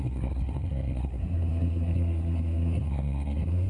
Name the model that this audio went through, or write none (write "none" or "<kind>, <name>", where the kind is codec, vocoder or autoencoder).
codec, SNAC